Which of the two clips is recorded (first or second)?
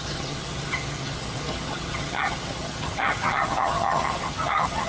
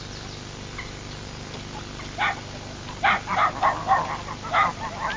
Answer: second